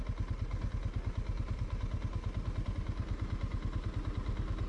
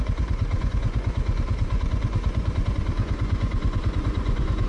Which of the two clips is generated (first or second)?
second